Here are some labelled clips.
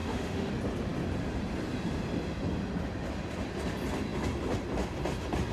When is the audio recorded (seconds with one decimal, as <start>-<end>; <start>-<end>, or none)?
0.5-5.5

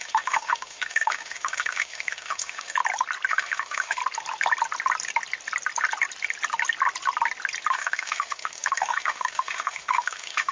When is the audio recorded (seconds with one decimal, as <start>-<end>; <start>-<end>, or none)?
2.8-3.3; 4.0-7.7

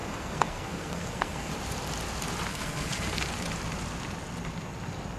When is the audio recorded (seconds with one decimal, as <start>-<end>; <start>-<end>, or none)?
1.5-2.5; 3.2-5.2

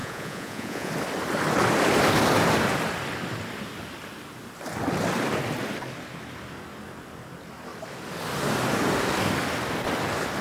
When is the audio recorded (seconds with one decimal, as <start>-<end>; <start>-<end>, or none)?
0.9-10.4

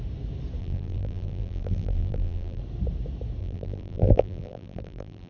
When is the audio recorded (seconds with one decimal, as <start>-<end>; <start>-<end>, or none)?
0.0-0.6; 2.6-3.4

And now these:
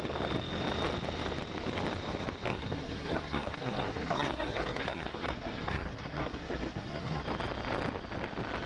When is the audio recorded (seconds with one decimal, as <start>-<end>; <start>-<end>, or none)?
0.0-2.5; 7.2-8.7